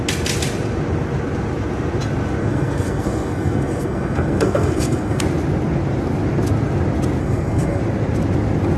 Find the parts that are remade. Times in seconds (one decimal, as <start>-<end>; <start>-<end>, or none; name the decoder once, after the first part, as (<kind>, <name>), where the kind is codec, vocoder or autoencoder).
2.4-5.2 (codec, SNAC); 7.2-7.8